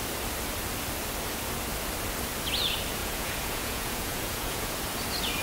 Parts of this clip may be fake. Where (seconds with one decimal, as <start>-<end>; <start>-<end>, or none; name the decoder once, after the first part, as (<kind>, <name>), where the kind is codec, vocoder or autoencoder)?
3.0-4.8 (vocoder, Vocos)